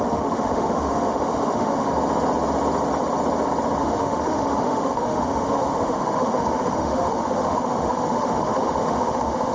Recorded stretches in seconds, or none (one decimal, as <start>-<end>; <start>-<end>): 1.9-3.8